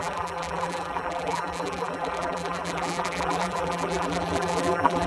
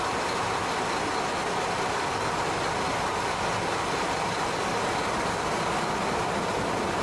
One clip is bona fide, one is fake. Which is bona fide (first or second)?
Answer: second